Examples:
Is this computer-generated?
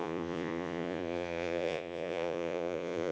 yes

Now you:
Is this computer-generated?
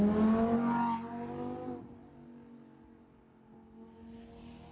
no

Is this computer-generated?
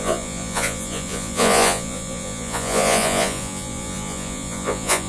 yes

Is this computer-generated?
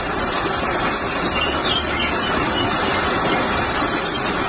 no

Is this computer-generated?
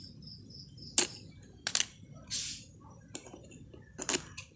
no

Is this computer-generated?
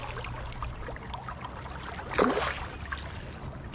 no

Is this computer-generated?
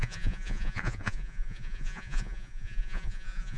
yes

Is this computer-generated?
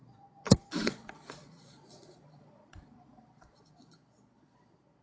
yes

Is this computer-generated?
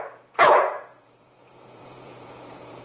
yes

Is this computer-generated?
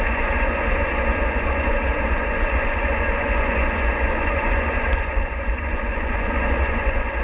yes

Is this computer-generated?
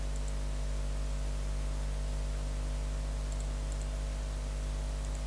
no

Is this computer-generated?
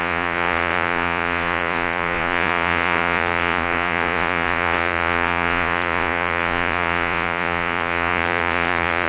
yes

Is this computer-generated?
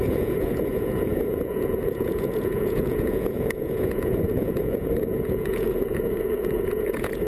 yes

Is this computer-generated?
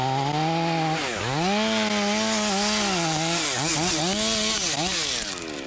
no